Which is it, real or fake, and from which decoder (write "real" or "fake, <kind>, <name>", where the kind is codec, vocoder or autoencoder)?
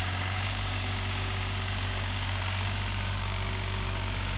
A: fake, codec, DAC